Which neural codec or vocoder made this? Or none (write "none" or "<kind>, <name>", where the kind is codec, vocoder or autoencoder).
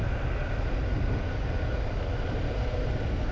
none